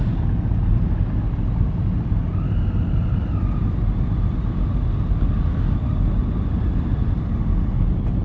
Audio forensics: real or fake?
real